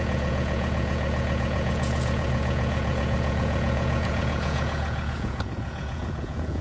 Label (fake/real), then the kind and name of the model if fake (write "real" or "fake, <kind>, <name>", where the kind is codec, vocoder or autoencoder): fake, vocoder, Vocos